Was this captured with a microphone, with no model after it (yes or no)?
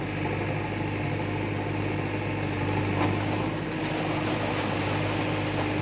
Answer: yes